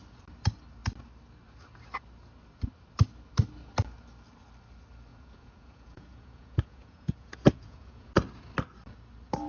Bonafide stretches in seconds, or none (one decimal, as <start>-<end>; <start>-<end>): 0.0-5.1; 8.1-9.5